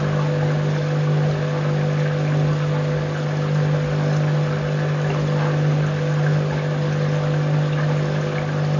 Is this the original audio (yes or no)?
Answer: yes